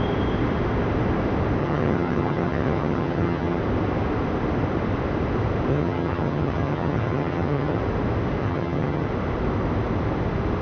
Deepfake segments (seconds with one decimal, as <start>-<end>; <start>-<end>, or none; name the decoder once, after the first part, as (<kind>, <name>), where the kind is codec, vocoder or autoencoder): 1.6-3.6 (vocoder, HiFi-GAN); 5.7-7.8; 8.4-9.1